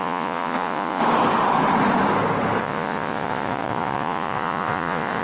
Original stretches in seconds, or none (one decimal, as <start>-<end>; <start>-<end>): 1.0-2.6